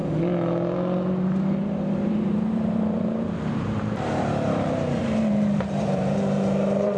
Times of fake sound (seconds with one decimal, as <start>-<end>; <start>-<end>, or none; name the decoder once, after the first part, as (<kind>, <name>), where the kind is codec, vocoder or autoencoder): 1.6-7.0 (vocoder, BigVGAN v2)

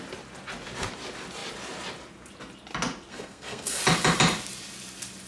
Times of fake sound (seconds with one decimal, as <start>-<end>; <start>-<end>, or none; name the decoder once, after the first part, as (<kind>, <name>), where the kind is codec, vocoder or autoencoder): 3.1-3.8 (codec, SNAC)

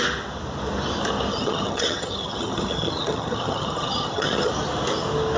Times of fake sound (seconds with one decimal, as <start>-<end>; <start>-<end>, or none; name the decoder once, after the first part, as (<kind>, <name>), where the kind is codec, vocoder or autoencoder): 1.3-4.5 (vocoder, HiFi-GAN)